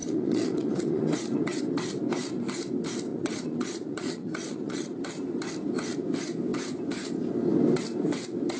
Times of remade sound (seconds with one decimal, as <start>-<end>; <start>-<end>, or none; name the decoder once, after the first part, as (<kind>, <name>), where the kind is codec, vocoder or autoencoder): 0.0-1.6 (vocoder, Vocos); 3.1-4.9